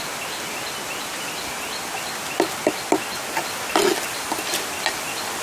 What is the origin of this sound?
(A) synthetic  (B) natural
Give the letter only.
B